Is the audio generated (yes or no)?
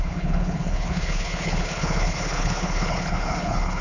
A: yes